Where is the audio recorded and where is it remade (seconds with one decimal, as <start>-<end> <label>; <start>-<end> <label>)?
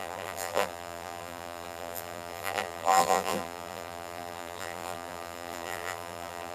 0.0-6.5 remade